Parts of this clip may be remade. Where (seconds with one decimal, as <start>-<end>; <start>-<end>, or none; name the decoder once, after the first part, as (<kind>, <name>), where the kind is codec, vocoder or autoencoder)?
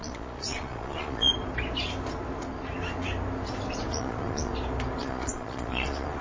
0.0-1.3 (vocoder, Vocos); 3.9-4.5; 5.0-6.2